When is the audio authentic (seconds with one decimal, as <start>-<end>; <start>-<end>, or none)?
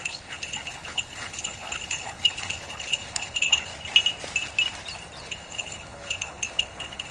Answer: 3.7-5.2